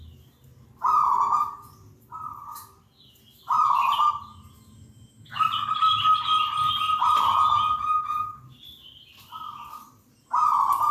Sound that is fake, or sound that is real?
real